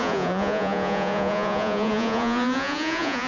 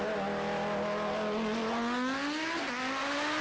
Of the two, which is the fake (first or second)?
first